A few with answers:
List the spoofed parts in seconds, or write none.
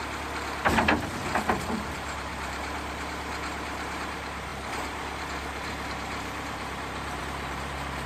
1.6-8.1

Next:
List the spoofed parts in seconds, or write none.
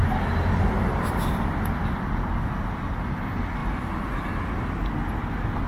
none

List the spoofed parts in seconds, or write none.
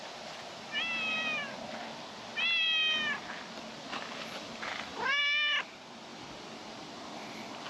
3.9-5.2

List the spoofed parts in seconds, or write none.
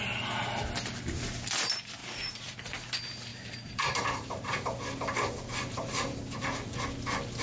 2.0-2.8; 3.3-6.8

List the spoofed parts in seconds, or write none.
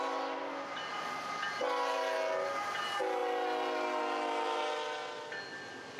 none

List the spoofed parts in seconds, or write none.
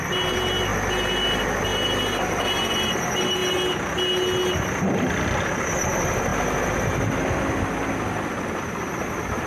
0.0-0.7; 1.2-1.7; 2.3-3.4; 5.5-6.3; 7.9-9.5